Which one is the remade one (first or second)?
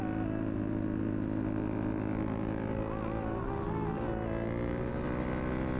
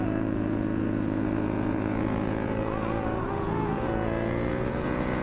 second